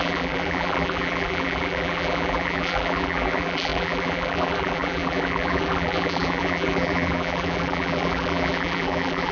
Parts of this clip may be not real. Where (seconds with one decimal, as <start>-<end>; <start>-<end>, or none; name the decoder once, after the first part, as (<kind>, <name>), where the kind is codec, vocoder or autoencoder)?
0.0-9.3 (vocoder, BigVGAN v2)